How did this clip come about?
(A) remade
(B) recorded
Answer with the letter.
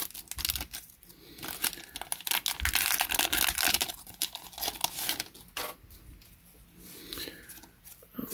B